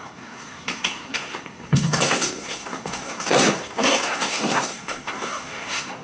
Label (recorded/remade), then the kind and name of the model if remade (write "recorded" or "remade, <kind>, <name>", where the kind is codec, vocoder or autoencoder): remade, codec, SNAC